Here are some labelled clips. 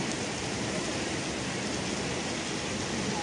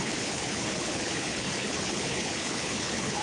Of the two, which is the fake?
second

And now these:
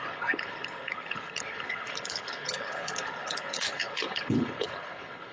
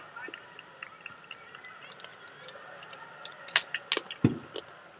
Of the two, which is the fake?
first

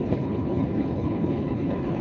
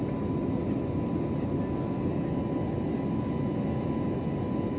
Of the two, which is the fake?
first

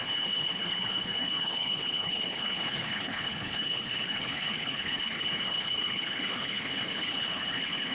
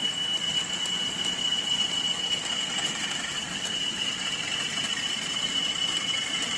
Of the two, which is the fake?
first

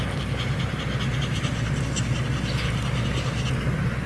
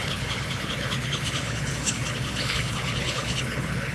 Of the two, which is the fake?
second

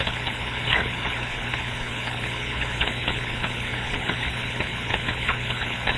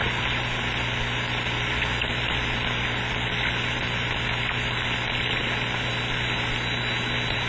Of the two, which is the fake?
first